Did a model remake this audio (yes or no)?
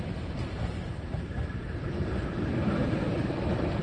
yes